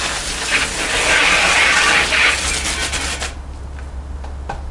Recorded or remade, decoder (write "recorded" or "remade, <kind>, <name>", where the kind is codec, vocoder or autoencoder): recorded